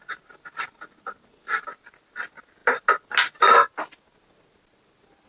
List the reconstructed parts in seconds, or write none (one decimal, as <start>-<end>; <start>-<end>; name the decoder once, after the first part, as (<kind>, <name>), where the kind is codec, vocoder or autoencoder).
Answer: none